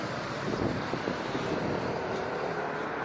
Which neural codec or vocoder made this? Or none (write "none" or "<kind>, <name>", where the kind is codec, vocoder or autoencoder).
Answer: vocoder, BigVGAN v2